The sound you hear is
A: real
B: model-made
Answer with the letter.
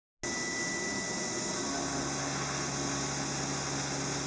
A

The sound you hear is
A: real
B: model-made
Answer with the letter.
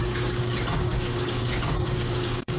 B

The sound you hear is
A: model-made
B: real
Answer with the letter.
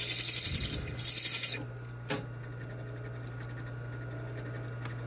B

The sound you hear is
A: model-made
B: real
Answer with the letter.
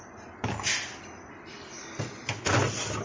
B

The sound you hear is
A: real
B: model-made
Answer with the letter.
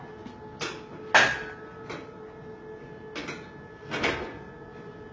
A